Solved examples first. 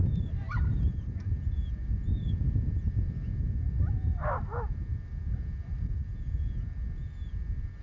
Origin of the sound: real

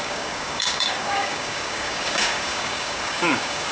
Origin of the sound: fake